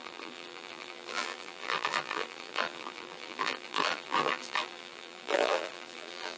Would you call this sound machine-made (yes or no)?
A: yes